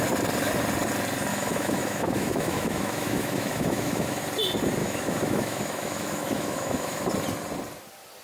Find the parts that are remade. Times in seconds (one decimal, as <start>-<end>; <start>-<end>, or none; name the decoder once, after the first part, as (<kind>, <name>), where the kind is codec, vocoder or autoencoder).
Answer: 1.3-4.2 (autoencoder, DAC-VAE); 4.8-7.1